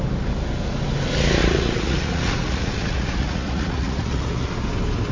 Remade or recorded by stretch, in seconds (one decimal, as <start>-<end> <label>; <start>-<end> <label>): 0.0-1.4 recorded; 1.4-4.5 remade; 4.5-5.1 recorded